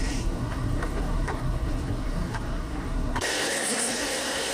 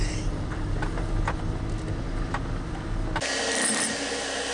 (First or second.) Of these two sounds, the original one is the second